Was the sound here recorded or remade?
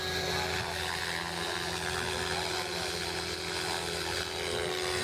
recorded